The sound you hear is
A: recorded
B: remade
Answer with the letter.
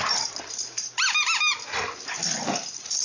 A